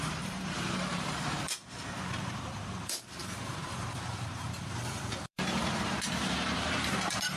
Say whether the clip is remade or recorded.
remade